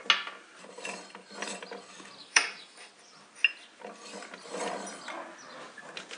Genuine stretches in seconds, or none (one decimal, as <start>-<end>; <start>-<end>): 0.0-2.2; 2.9-6.2